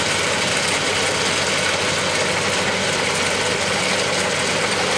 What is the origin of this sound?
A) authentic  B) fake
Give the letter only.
A